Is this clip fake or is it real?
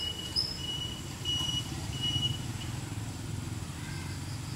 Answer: real